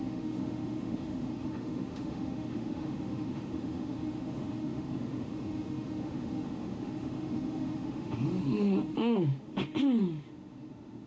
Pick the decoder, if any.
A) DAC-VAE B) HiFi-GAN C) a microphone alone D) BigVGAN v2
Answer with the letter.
A